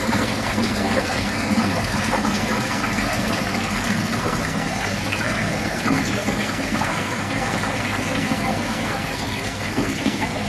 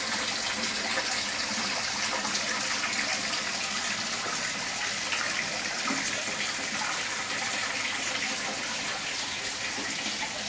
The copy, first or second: first